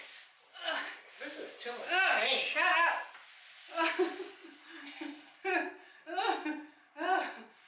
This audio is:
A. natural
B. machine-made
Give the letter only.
A